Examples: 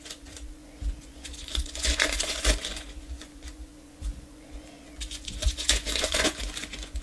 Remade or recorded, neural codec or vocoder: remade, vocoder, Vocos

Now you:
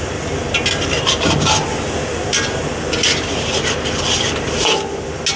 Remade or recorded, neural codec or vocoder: recorded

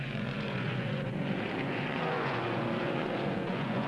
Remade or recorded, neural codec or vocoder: remade, vocoder, Vocos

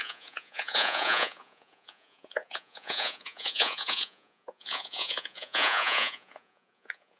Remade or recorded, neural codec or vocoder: remade, vocoder, Vocos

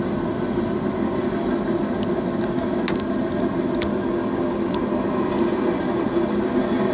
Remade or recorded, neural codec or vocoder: recorded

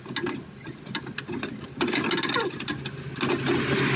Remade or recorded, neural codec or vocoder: recorded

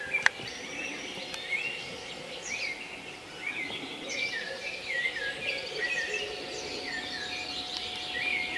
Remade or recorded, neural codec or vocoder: recorded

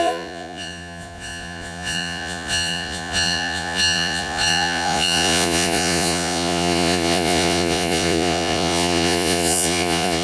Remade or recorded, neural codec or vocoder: remade, vocoder, Vocos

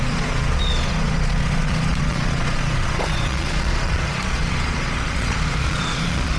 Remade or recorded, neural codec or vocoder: remade, vocoder, Vocos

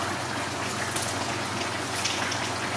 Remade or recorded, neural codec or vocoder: remade, vocoder, Vocos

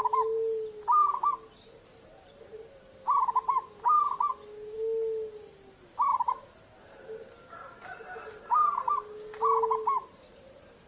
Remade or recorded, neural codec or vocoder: recorded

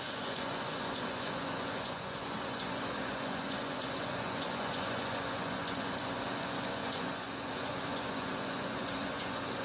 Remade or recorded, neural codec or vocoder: remade, vocoder, Vocos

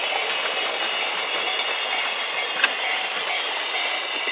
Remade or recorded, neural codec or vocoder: recorded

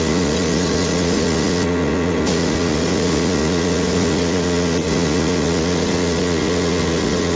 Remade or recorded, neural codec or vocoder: remade, vocoder, Vocos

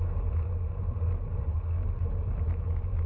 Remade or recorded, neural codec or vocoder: recorded